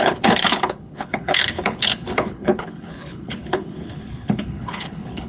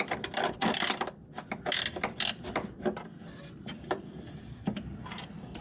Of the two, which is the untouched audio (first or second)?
second